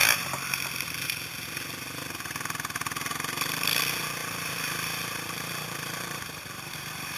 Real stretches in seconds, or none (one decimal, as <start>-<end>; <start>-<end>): 0.6-4.2